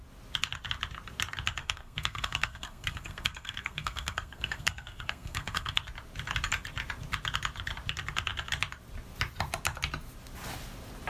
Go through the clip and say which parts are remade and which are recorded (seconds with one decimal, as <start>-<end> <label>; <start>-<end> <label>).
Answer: 0.0-1.6 recorded; 1.6-5.8 remade; 5.8-11.1 recorded